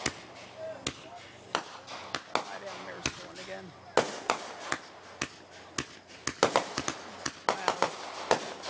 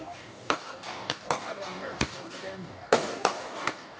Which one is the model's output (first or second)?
second